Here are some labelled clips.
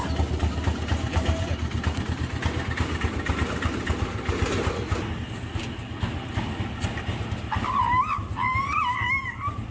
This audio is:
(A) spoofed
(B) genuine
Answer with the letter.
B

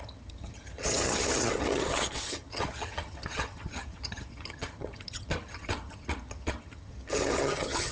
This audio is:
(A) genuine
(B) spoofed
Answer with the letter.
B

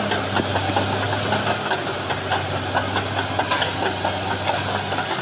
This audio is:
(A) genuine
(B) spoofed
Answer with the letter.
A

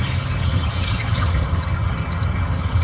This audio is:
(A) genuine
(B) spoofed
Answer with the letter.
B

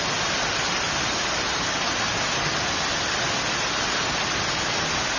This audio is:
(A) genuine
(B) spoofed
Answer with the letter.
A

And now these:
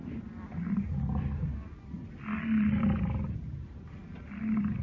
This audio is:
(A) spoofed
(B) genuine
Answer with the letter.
B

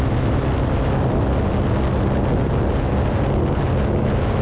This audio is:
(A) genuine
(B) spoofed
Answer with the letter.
A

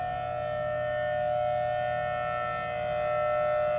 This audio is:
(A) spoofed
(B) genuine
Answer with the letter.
B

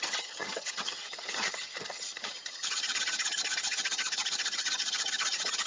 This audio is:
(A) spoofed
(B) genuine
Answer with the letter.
A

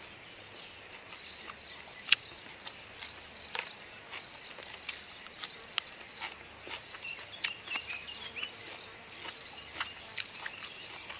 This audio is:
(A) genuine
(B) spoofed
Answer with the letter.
A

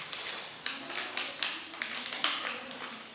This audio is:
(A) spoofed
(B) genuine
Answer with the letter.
B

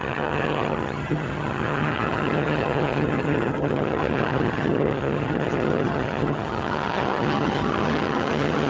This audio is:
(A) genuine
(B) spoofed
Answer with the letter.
B